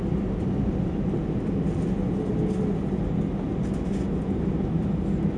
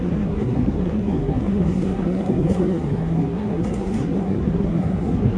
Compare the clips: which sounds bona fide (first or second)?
first